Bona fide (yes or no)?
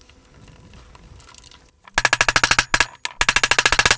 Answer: yes